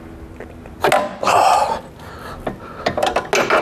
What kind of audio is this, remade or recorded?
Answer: recorded